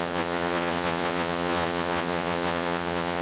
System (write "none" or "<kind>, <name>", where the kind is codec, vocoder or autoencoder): vocoder, Vocos